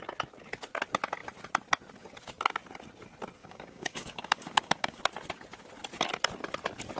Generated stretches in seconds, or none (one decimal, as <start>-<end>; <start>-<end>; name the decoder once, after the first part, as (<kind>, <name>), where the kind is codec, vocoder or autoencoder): 3.4-5.0 (codec, DAC)